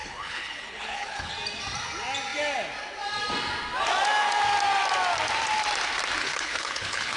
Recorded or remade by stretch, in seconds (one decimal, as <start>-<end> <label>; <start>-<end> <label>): 0.0-1.3 remade; 1.3-6.2 recorded; 6.2-7.2 remade

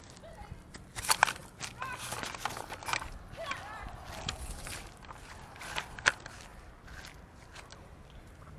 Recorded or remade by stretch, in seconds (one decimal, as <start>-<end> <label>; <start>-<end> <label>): 0.0-8.6 recorded

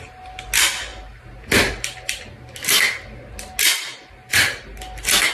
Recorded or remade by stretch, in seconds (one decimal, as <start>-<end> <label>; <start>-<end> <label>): 0.0-5.3 recorded

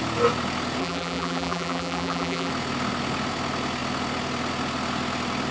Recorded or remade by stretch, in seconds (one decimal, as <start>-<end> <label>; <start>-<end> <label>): 0.0-0.8 recorded; 0.8-2.5 remade; 2.5-5.5 recorded

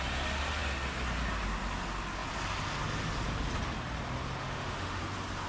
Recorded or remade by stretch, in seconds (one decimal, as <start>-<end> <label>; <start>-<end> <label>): 0.0-4.4 recorded; 4.4-5.0 remade; 5.0-5.5 recorded

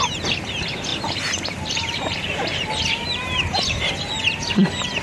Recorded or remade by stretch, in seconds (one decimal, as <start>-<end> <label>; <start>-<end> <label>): 0.0-0.9 recorded; 0.9-3.9 remade; 3.9-5.0 recorded

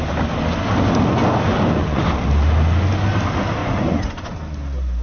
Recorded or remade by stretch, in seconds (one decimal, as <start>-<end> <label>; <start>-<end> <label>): 0.0-1.5 recorded; 1.5-2.0 remade; 2.0-3.6 recorded; 3.6-4.3 remade; 4.3-5.0 recorded